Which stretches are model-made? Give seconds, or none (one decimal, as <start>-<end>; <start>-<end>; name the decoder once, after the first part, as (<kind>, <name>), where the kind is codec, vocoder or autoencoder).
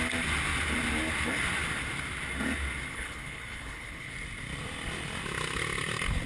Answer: 2.9-4.1 (codec, HILCodec)